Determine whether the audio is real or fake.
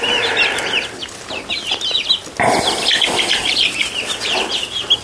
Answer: real